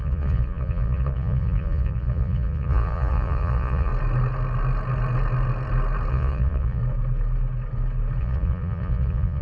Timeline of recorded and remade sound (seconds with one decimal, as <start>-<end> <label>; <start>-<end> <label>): 0.0-3.9 remade; 3.9-6.1 recorded; 6.1-6.8 remade; 6.8-8.2 recorded; 8.2-9.4 remade